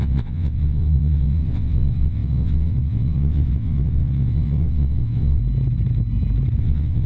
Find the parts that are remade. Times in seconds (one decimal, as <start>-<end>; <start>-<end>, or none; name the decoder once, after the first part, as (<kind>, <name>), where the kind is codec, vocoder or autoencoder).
0.0-5.4 (vocoder, WaveNeXt); 6.6-7.1